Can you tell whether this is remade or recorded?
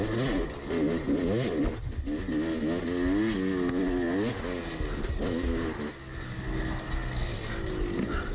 recorded